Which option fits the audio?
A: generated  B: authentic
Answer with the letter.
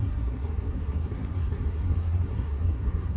A